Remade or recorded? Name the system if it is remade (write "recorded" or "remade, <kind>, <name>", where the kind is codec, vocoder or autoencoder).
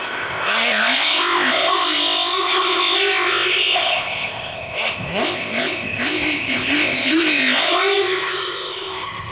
remade, codec, ZipCodec